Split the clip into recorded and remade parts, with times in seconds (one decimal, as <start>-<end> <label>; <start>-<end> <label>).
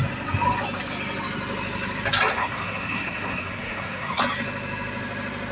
0.0-2.3 recorded; 2.3-4.2 remade; 4.2-5.5 recorded